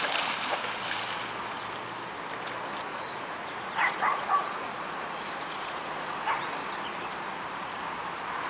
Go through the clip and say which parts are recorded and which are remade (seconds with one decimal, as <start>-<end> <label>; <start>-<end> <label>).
0.0-2.9 recorded; 2.9-6.3 remade; 6.3-8.5 recorded